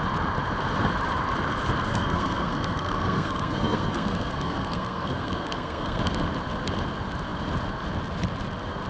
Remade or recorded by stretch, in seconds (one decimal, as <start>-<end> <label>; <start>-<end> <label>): 0.0-1.9 recorded; 1.9-6.0 remade; 6.0-8.9 recorded